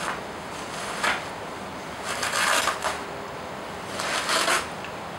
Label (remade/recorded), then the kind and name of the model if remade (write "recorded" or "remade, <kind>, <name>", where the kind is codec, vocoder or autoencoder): recorded